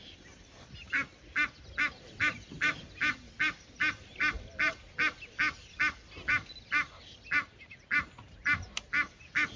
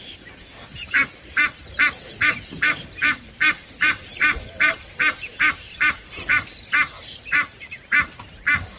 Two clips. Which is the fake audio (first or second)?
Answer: second